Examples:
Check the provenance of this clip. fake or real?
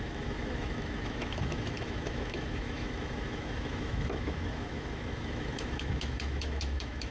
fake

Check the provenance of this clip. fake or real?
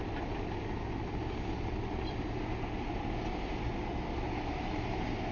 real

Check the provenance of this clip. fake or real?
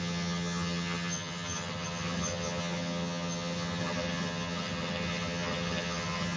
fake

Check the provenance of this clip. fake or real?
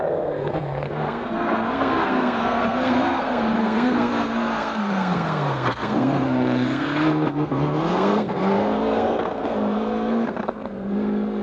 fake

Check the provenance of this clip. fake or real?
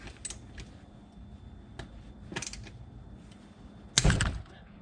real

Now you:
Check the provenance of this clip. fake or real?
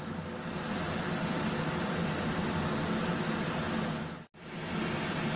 real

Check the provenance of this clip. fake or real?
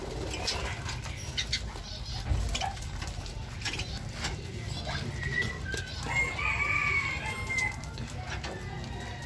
real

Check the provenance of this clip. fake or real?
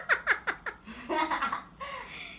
real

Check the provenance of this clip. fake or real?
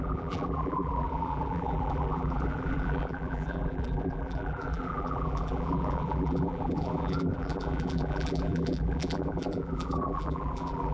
fake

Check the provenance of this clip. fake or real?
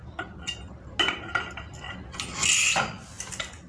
real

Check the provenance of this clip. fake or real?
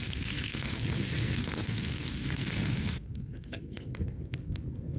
fake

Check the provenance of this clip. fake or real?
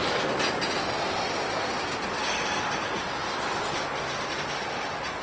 real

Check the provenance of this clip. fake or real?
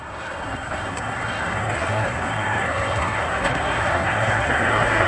fake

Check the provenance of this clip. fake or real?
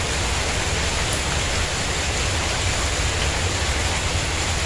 real